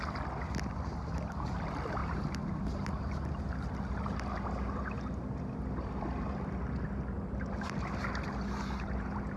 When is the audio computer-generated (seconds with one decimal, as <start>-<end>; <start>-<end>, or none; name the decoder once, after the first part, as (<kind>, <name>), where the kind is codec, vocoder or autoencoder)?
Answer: 2.0-2.9 (vocoder, BigVGAN v2)